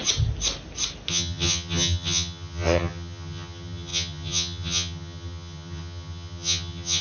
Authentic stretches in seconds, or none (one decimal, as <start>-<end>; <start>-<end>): 0.0-1.1